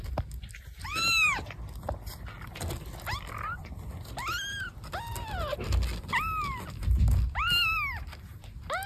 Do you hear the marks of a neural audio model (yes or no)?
no